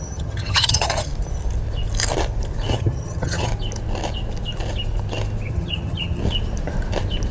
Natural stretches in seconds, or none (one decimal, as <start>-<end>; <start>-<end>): 1.1-2.7; 3.5-5.5; 6.2-7.3